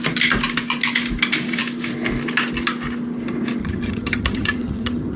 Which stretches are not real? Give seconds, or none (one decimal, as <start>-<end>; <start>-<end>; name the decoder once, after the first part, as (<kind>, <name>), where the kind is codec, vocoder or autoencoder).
3.6-5.2 (vocoder, HiFi-GAN)